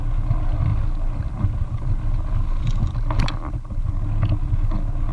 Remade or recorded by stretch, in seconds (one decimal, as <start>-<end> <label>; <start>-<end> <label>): 0.0-5.1 recorded